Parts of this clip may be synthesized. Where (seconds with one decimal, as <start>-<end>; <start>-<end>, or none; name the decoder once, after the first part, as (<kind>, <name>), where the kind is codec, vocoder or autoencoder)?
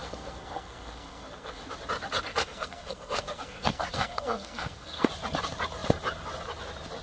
0.0-1.6 (codec, SNAC); 2.3-5.1